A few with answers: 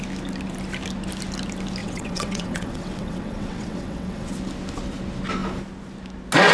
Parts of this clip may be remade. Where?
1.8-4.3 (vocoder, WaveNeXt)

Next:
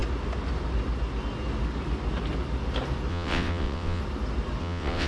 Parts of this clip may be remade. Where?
3.1-4.0 (vocoder, WaveNeXt); 4.6-5.1

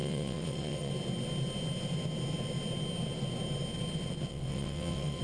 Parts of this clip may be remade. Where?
0.0-0.9 (vocoder, WaveNeXt); 4.3-5.2